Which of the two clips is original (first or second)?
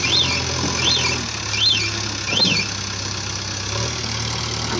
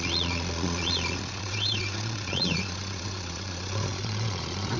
first